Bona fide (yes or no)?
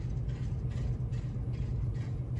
yes